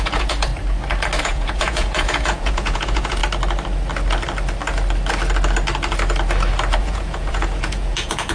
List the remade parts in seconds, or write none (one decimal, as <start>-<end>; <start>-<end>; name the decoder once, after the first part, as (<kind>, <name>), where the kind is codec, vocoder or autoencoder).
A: 0.0-0.5 (vocoder, Vocos); 1.2-3.2; 6.8-8.3